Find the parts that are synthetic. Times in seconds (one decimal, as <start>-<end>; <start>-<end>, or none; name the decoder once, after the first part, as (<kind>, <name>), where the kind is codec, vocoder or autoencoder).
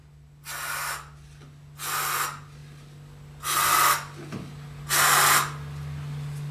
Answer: none